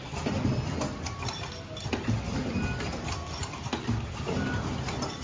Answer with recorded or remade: recorded